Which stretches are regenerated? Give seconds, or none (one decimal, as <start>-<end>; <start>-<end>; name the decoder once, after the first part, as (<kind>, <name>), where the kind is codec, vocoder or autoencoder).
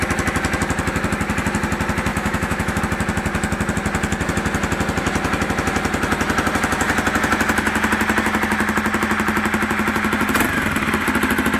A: 2.1-2.8 (autoencoder, DAC-VAE)